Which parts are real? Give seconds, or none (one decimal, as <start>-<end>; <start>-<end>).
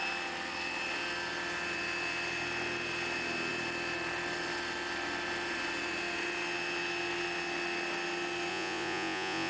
0.0-8.5